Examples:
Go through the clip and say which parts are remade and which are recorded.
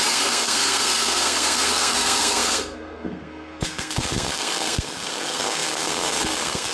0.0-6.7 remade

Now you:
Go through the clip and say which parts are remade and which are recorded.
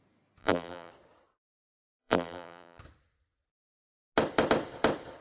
0.0-0.4 recorded; 0.4-0.9 remade; 0.9-2.0 recorded; 2.0-2.8 remade; 2.8-5.2 recorded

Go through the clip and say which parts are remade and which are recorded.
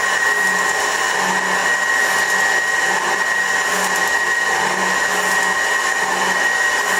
0.0-7.0 recorded